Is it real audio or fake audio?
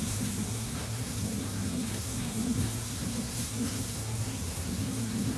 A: fake